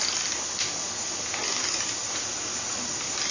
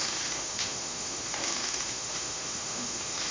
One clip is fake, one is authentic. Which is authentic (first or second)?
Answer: first